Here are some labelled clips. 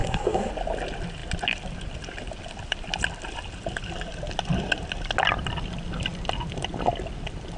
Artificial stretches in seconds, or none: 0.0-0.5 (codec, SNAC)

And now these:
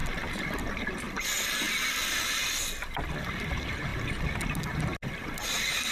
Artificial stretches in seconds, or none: none

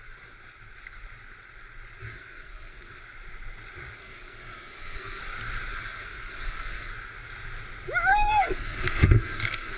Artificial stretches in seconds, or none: 2.0-3.0 (codec, SNAC); 4.0-5.2; 5.7-6.9; 8.1-9.8

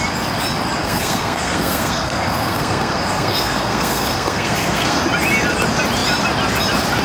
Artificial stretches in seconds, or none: 0.8-5.0 (codec, SNAC)